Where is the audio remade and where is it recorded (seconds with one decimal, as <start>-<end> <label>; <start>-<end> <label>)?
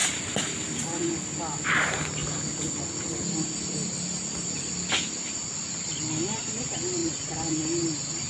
0.0-8.3 recorded